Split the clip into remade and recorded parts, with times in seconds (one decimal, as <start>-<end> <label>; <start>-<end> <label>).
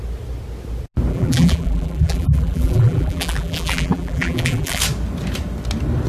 0.0-1.1 recorded; 1.1-4.8 remade; 4.8-6.1 recorded